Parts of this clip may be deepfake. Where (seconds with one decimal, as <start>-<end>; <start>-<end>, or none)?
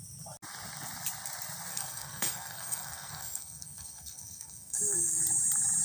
1.7-5.2